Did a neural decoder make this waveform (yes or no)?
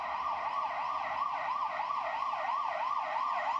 no